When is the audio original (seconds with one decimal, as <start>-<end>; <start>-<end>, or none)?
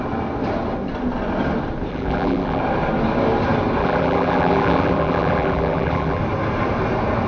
0.0-1.9; 2.6-3.8; 6.2-7.3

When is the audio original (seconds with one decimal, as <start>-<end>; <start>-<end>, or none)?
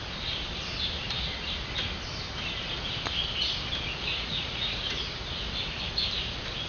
0.0-4.1; 5.0-6.7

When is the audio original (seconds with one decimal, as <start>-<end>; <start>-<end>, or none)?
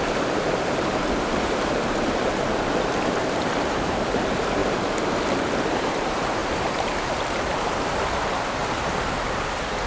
2.5-3.4; 8.6-9.9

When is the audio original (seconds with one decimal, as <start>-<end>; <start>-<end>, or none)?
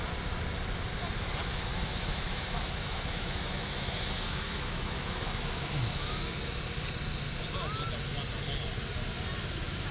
0.0-1.7; 6.6-9.9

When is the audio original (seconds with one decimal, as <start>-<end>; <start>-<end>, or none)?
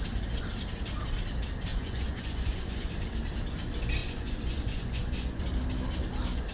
0.0-1.7; 2.9-4.0; 5.4-6.5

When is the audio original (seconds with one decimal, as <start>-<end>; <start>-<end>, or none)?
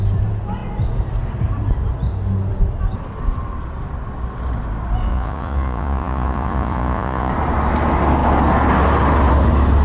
0.0-5.1; 7.3-9.8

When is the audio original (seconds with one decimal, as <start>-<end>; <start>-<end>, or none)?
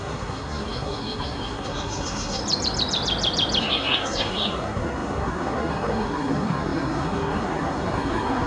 2.4-3.6